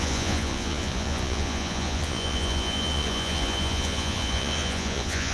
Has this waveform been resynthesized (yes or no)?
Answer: yes